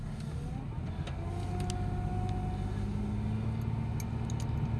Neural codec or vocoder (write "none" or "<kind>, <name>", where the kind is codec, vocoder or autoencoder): none